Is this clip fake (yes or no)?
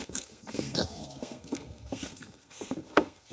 yes